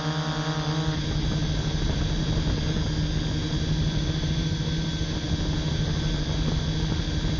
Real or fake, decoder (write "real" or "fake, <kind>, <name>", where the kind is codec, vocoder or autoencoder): real